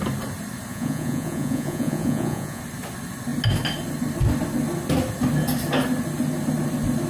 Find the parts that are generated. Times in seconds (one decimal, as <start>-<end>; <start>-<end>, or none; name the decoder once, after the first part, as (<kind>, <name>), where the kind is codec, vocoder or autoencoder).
0.7-2.6 (vocoder, Vocos)